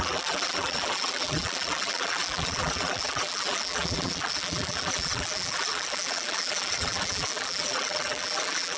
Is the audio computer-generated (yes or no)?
yes